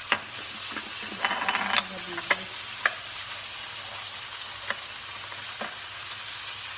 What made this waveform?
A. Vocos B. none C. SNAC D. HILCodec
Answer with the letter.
B